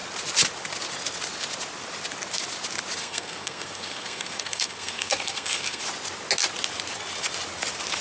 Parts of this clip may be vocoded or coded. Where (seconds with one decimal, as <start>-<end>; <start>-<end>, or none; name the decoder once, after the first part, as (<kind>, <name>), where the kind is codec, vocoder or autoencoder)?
3.0-5.8 (codec, SNAC)